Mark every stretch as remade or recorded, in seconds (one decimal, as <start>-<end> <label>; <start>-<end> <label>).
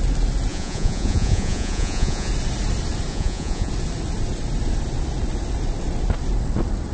0.0-0.5 recorded; 0.5-2.3 remade; 2.3-3.1 recorded; 3.1-3.7 remade; 3.7-6.9 recorded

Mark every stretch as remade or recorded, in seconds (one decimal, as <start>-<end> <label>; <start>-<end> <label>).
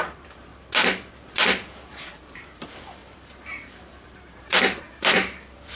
0.0-0.5 remade; 0.5-1.8 recorded; 1.8-5.8 remade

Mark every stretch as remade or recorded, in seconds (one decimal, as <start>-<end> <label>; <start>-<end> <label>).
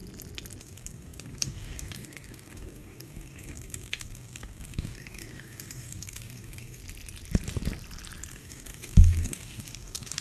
0.0-0.6 recorded; 0.6-6.8 remade; 6.8-8.3 recorded; 8.3-10.2 remade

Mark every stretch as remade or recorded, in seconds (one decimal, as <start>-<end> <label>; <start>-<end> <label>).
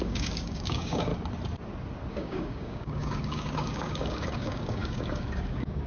0.0-1.1 remade; 1.1-2.1 recorded; 2.1-5.9 remade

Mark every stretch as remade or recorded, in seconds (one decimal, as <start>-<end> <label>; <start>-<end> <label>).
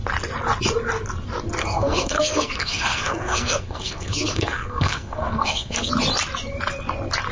0.0-1.6 recorded; 1.6-5.9 remade; 5.9-7.3 recorded